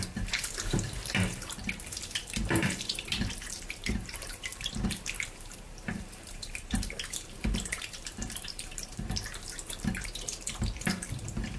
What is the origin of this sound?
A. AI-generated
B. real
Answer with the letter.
A